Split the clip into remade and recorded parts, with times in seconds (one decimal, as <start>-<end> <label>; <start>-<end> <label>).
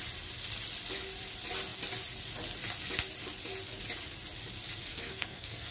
0.0-4.9 recorded; 4.9-5.7 remade